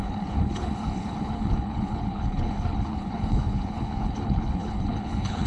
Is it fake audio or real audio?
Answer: fake